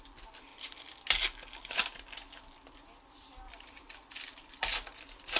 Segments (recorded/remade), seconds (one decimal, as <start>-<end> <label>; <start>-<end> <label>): 0.0-0.5 remade; 0.5-3.5 recorded; 3.5-5.4 remade